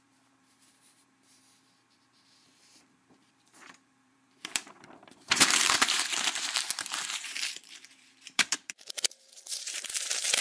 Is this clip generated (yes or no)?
yes